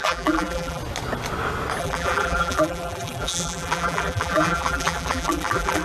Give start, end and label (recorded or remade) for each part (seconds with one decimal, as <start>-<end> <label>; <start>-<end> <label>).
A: 0.0-0.8 remade; 0.8-1.8 recorded; 1.8-5.8 remade